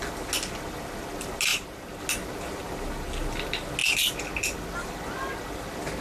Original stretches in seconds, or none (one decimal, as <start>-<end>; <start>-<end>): 0.0-1.5; 2.0-6.0